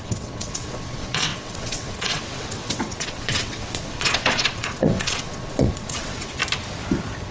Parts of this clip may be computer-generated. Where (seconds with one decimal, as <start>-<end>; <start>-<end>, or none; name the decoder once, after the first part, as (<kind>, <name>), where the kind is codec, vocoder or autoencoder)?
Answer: 0.0-6.4 (vocoder, WaveNeXt)